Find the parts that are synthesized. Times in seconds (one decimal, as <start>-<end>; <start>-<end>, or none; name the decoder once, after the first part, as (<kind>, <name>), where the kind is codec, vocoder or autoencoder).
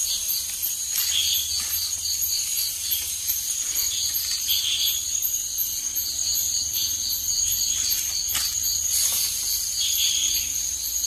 0.0-0.7 (vocoder, BigVGAN v2); 5.6-10.4